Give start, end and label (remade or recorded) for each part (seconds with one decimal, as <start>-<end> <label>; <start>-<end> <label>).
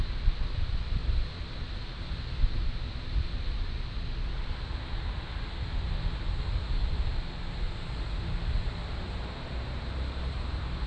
0.0-10.9 recorded